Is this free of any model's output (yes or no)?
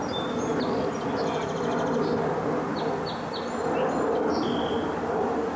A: yes